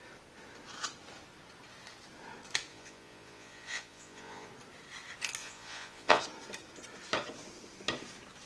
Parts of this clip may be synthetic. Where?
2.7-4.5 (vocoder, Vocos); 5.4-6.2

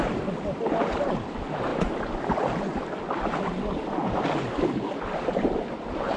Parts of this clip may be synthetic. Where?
none

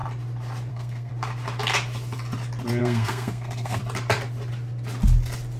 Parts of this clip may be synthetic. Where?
0.7-1.1 (codec, SNAC); 2.8-3.8